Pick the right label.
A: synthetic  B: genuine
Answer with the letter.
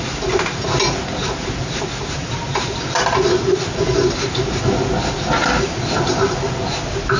B